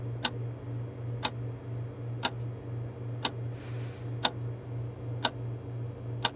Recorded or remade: recorded